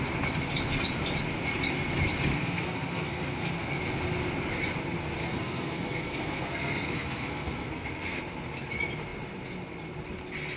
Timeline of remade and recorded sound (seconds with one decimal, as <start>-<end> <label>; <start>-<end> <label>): 0.0-2.3 recorded; 2.3-3.5 remade; 3.5-5.2 recorded; 5.2-8.2 remade; 8.2-10.6 recorded